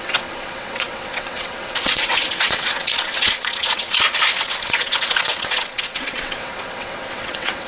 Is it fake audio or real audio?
fake